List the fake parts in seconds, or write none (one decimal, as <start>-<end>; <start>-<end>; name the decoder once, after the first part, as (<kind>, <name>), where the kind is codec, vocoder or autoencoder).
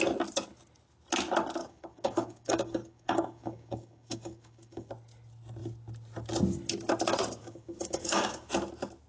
1.6-4.9 (codec, DAC); 7.4-8.5